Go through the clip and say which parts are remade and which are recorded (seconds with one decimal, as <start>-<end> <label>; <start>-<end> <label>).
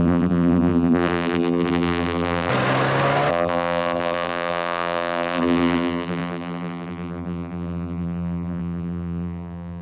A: 0.0-2.5 remade; 2.5-3.3 recorded; 3.3-9.8 remade